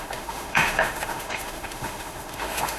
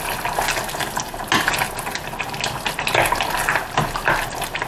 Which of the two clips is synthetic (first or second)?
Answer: first